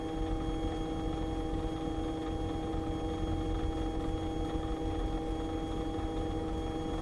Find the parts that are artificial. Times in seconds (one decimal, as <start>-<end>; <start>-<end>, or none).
none